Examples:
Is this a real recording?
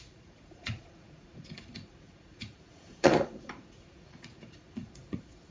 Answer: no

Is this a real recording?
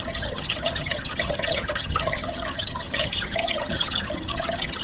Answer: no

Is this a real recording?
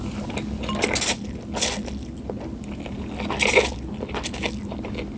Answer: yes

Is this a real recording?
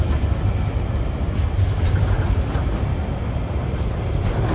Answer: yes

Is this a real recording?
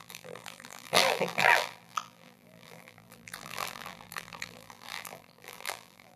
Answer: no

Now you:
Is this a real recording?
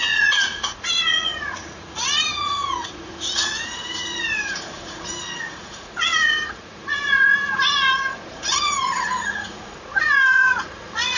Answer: no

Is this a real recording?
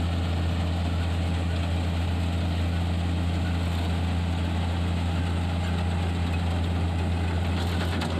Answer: yes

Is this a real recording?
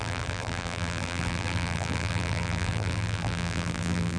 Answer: no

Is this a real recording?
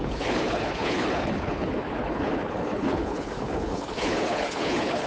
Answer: no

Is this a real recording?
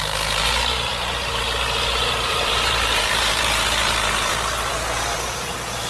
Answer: no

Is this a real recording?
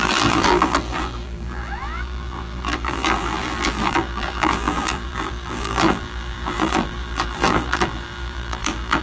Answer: no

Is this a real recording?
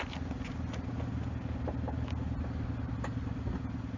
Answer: yes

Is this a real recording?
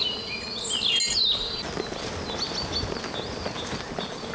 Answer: yes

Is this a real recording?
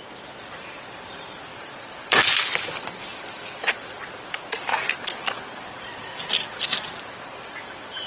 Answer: yes